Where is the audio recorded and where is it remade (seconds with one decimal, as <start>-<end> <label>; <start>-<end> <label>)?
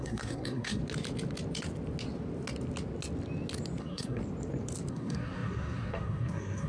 0.0-0.8 remade; 0.8-3.8 recorded; 3.8-4.2 remade; 4.2-4.9 recorded; 4.9-6.7 remade